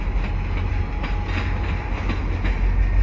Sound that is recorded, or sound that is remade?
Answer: recorded